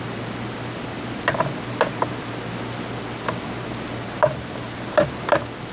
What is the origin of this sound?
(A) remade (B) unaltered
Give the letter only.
B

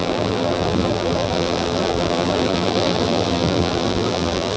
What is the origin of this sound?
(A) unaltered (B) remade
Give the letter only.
B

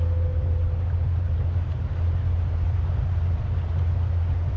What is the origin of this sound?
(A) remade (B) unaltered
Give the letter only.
B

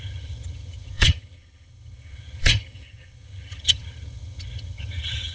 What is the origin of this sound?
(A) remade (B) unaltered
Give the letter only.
A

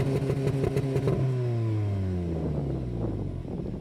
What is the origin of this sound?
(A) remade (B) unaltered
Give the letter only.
B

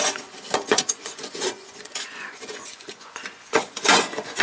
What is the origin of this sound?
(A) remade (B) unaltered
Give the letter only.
A